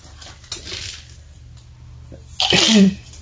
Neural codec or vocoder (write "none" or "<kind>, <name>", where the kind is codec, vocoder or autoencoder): none